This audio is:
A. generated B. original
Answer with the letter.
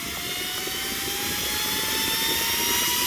B